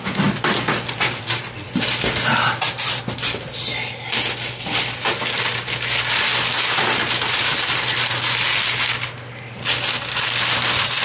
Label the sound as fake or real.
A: real